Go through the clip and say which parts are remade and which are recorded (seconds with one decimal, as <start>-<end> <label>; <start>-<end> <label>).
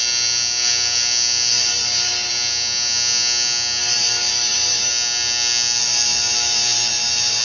0.0-1.5 recorded; 1.5-2.3 remade; 2.3-3.8 recorded; 3.8-4.9 remade; 4.9-5.8 recorded; 5.8-7.4 remade